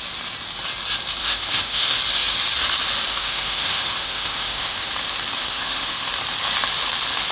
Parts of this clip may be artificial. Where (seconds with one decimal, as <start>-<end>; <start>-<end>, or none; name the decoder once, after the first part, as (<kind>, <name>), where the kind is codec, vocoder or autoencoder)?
1.2-2.0 (autoencoder, DAC-VAE); 3.1-4.9; 5.4-6.1